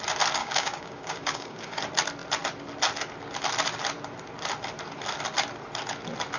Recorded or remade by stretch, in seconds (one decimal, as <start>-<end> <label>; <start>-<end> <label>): 0.0-0.4 recorded; 0.4-1.8 remade; 1.8-6.4 recorded